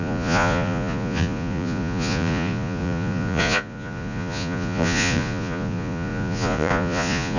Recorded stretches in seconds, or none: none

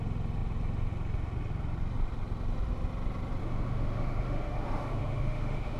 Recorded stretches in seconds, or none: 0.0-3.4